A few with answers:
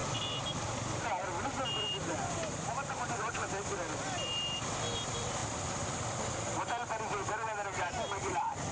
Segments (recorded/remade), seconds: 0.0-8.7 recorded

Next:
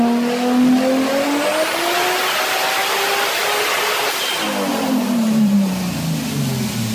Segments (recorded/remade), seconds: 0.0-4.7 recorded; 4.7-5.7 remade; 5.7-6.9 recorded

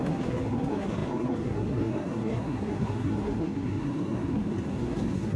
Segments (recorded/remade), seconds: 0.0-5.4 remade